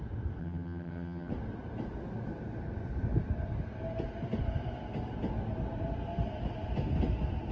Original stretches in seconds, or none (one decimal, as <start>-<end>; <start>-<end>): 0.0-0.4; 1.3-7.5